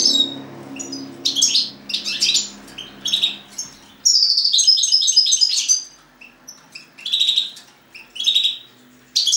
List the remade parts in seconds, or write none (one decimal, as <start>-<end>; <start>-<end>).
4.5-8.1